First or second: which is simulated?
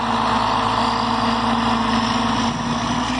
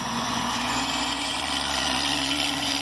second